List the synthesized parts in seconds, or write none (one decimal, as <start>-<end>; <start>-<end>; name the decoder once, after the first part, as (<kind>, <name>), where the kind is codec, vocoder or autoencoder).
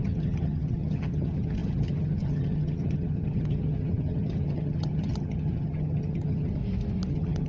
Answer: 0.0-6.6 (vocoder, HiFi-GAN); 7.1-7.5